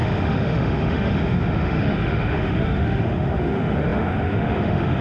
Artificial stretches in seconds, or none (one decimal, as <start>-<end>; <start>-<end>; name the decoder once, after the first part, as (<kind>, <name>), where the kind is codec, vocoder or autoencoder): 0.0-5.0 (autoencoder, DAC-VAE)